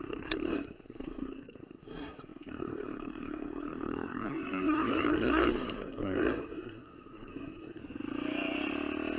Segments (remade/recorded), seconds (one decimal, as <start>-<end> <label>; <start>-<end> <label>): 0.0-7.8 remade; 7.8-9.2 recorded